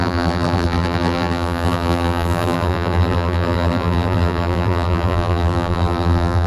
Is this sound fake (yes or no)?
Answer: yes